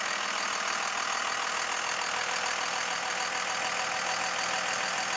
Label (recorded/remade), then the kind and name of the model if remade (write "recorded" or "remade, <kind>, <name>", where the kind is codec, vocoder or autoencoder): recorded